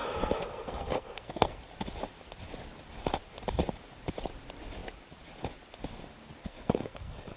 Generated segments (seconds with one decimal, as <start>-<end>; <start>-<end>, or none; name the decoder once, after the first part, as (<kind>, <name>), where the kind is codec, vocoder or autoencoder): 0.0-1.6 (codec, SNAC); 6.4-7.4